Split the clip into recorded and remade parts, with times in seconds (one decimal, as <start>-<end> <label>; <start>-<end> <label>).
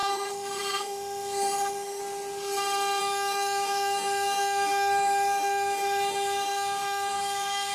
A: 0.0-2.0 remade; 2.0-3.0 recorded; 3.0-7.7 remade